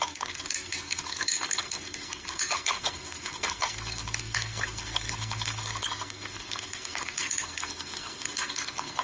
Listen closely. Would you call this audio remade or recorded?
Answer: remade